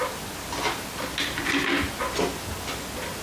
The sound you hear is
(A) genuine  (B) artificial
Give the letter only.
A